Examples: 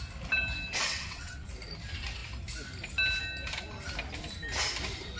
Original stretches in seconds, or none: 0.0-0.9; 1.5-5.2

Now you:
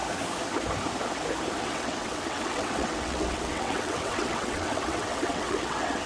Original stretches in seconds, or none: 0.0-1.6

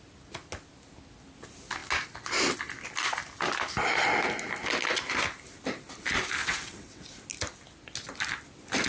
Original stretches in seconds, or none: 0.0-6.4; 7.0-8.9

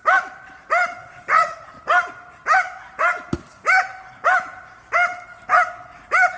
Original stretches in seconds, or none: 0.0-1.0; 1.7-6.4

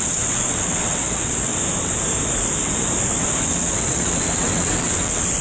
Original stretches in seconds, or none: 1.5-3.4

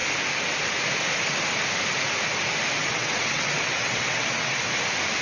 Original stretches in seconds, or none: 0.0-2.8; 4.6-5.2

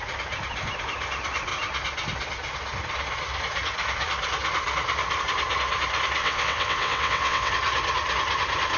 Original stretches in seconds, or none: 0.0-6.2; 7.5-8.8

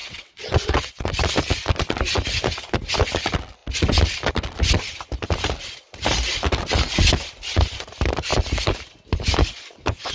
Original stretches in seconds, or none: 1.1-10.1